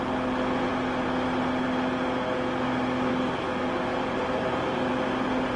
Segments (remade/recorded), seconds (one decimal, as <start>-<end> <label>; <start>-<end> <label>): 0.0-3.9 recorded; 3.9-4.9 remade; 4.9-5.6 recorded